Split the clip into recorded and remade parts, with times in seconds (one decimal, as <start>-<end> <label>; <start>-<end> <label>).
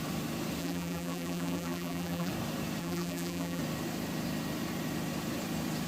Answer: 0.0-0.6 recorded; 0.6-2.3 remade; 2.3-2.8 recorded; 2.8-3.6 remade; 3.6-5.9 recorded